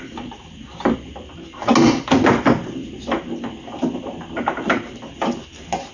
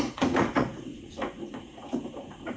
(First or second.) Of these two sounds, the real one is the first